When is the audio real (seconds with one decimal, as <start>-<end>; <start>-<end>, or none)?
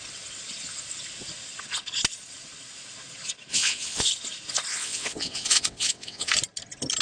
0.0-3.5; 4.1-4.7; 6.3-7.0